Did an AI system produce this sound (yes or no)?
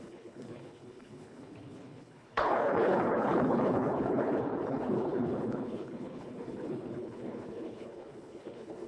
yes